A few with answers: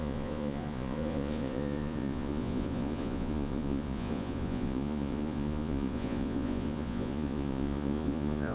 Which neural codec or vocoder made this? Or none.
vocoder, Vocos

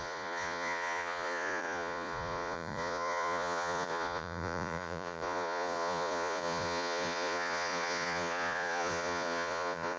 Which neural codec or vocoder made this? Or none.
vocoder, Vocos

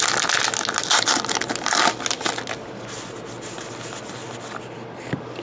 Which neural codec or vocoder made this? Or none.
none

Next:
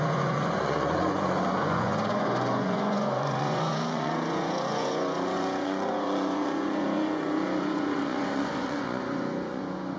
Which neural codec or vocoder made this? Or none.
vocoder, Vocos